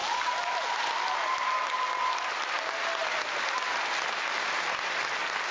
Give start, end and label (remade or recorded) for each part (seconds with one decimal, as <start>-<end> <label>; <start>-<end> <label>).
0.0-5.5 recorded